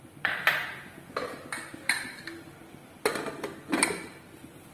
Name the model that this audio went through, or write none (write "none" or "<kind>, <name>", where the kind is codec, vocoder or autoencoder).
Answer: none